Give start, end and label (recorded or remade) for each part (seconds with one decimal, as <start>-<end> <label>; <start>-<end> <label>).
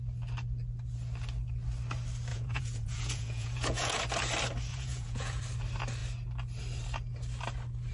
0.0-2.3 recorded; 2.3-4.0 remade; 4.0-4.7 recorded; 4.7-5.4 remade; 5.4-7.9 recorded